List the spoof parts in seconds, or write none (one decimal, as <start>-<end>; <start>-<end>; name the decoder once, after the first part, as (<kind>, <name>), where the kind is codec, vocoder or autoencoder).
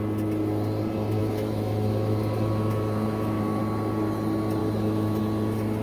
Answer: 1.2-3.6 (autoencoder, DAC-VAE); 4.6-5.2